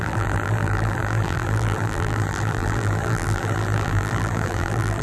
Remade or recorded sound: remade